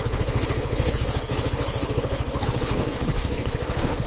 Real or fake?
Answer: fake